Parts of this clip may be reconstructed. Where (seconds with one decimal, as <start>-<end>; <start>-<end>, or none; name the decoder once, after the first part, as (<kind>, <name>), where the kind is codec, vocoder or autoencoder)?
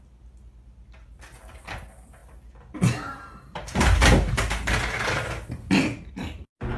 none